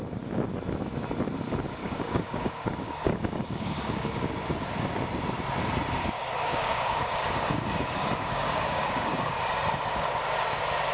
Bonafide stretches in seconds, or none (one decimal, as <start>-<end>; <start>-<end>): 0.0-1.8; 4.3-6.0; 9.5-10.9